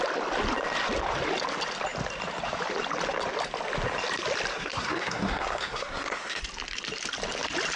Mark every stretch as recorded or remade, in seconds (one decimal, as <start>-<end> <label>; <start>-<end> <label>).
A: 0.0-4.5 recorded; 4.5-6.4 remade; 6.4-7.8 recorded